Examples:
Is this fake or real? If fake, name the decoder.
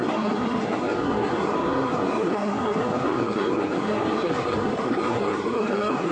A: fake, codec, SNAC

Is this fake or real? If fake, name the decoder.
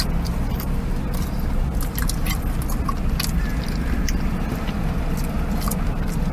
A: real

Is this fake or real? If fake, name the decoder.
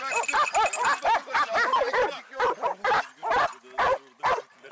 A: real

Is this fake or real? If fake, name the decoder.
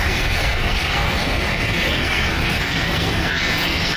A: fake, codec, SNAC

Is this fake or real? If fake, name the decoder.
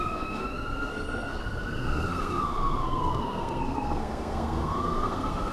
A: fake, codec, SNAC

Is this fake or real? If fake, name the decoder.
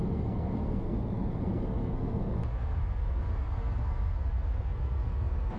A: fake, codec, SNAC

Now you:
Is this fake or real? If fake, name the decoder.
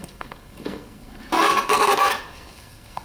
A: fake, codec, SNAC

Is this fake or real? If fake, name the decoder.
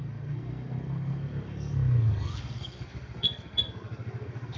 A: fake, codec, SNAC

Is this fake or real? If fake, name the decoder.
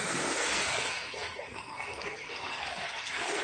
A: fake, codec, SNAC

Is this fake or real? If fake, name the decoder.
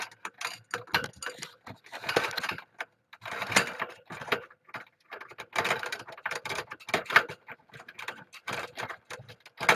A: real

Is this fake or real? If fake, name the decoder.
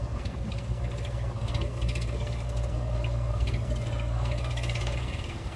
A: fake, codec, SNAC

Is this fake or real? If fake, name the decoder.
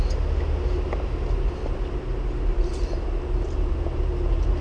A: real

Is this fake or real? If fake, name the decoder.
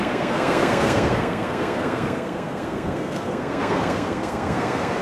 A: fake, codec, SNAC